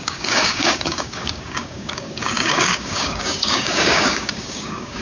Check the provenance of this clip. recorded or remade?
remade